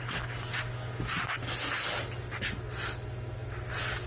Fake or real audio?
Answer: real